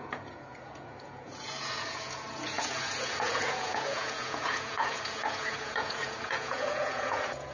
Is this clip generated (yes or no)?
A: yes